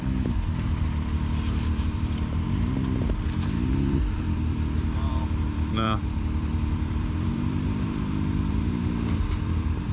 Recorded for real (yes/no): no